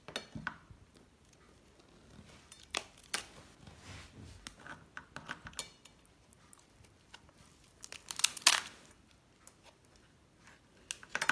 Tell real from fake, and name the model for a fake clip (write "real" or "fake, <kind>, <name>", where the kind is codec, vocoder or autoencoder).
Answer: real